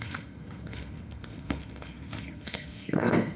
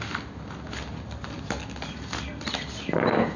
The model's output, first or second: first